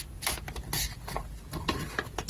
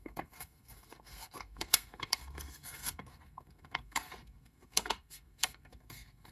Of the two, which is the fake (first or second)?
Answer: second